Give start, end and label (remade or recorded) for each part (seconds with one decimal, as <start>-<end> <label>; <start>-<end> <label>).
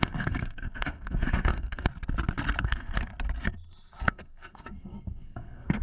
0.0-1.9 remade; 1.9-2.6 recorded; 2.6-3.1 remade; 3.1-4.0 recorded; 4.0-5.8 remade